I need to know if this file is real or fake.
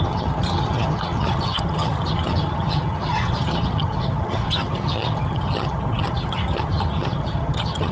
fake